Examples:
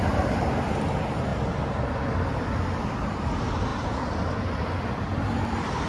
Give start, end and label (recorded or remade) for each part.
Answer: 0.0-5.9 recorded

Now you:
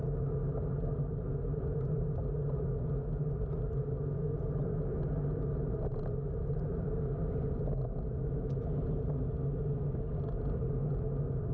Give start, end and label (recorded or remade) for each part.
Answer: 0.0-6.7 recorded; 6.7-7.6 remade; 7.6-11.5 recorded